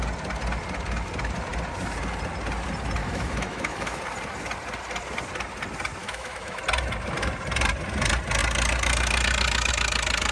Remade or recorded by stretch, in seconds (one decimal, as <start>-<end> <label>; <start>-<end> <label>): 0.0-3.0 recorded; 3.0-4.0 remade; 4.0-6.0 recorded; 6.0-6.6 remade; 6.6-10.3 recorded